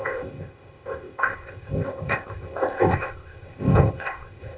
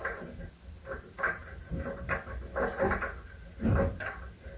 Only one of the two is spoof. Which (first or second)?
first